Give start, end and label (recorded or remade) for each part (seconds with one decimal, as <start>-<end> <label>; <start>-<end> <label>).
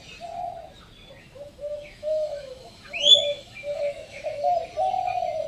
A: 0.0-1.2 recorded; 1.2-4.5 remade; 4.5-5.5 recorded